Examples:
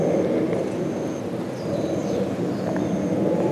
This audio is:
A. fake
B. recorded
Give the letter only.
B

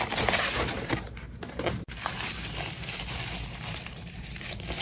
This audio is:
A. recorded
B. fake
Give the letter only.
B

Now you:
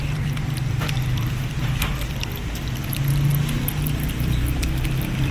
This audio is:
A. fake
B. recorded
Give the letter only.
A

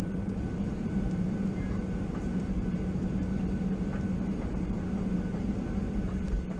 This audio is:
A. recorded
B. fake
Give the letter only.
B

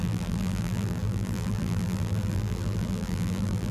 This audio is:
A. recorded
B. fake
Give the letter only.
B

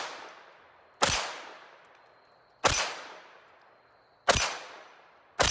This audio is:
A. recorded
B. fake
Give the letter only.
A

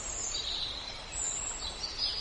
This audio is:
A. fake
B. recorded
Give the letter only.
B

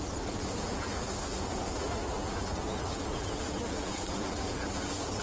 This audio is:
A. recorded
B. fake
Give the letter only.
B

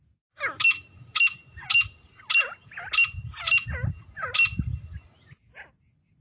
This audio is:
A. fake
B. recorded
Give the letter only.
B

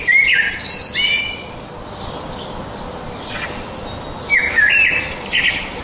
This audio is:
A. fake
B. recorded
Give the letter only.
B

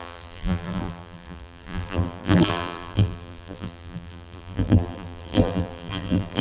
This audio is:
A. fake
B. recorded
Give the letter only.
A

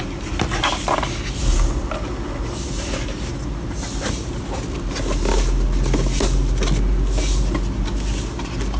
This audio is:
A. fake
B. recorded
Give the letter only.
B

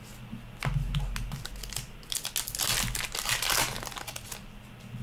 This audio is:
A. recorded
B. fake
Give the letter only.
A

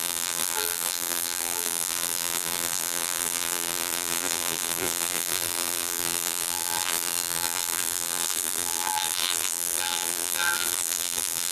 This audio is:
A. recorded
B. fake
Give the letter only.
B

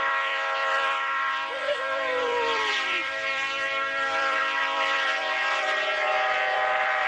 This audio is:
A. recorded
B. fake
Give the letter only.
B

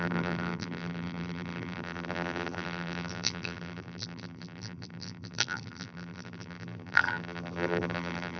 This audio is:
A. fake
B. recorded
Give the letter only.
A